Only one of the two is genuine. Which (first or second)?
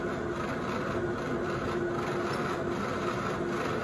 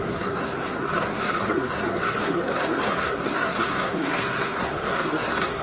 first